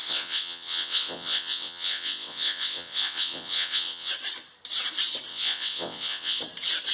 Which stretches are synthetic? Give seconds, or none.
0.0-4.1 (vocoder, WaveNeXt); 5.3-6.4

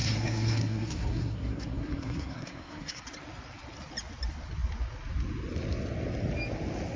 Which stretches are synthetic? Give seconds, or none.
0.0-3.0 (codec, SNAC)

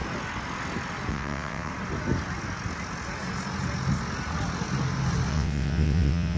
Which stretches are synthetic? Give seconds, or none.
1.1-1.7 (vocoder, WaveNeXt); 5.3-6.4

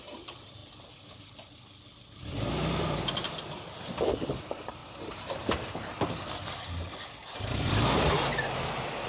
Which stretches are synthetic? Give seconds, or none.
none

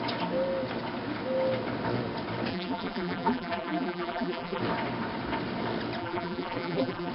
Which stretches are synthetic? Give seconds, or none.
2.5-4.6 (vocoder, BigVGAN v2); 6.0-7.1

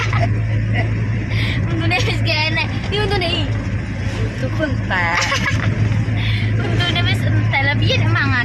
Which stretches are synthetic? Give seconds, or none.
0.0-8.4 (vocoder, BigVGAN v2)

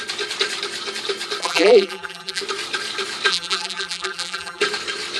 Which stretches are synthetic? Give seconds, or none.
1.4-2.4 (vocoder, BigVGAN v2); 3.3-4.6